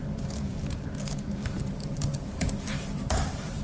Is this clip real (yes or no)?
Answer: no